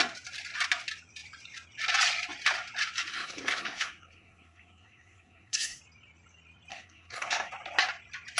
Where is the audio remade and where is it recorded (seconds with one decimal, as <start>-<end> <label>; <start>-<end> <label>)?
0.0-3.1 recorded; 3.1-5.8 remade; 5.8-6.7 recorded; 6.7-7.5 remade; 7.5-8.4 recorded

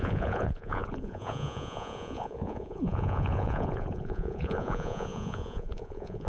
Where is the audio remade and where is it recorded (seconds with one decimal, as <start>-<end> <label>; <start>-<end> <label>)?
0.0-6.3 remade

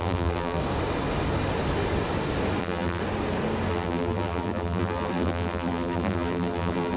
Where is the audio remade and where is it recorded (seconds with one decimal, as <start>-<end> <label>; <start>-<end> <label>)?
0.0-0.6 remade; 0.6-2.6 recorded; 2.6-3.0 remade; 3.0-3.7 recorded; 3.7-7.0 remade

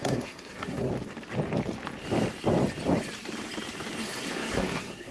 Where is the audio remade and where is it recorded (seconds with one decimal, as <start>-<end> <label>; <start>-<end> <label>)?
0.0-0.9 remade; 0.9-4.0 recorded; 4.0-5.1 remade

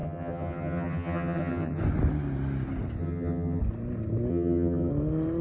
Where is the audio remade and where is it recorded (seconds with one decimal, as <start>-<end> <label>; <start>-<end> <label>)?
0.0-1.8 remade; 1.8-3.0 recorded; 3.0-3.6 remade; 3.6-4.3 recorded; 4.3-4.9 remade; 4.9-5.4 recorded

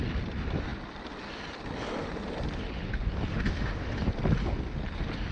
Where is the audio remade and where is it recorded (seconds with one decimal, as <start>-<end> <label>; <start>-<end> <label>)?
0.0-3.3 recorded; 3.3-3.9 remade; 3.9-5.3 recorded